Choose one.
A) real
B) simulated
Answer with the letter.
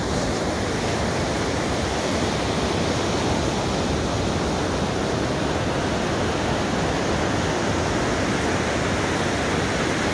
A